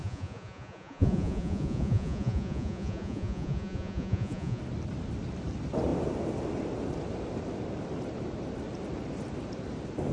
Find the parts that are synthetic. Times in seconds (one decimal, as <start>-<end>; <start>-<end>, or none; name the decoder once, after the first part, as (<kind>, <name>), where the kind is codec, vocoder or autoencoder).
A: 0.0-4.6 (vocoder, Vocos)